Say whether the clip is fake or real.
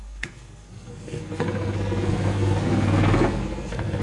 fake